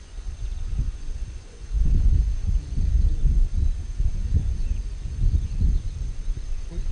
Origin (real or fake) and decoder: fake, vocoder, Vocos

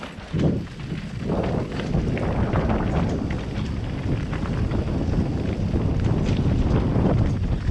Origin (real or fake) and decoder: real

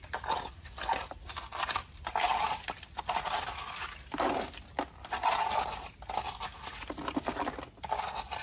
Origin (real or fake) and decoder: real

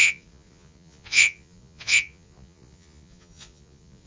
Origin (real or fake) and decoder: fake, vocoder, Vocos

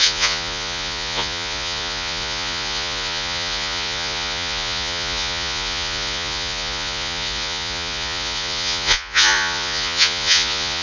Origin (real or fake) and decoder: fake, vocoder, Vocos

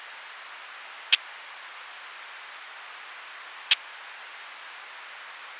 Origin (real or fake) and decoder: real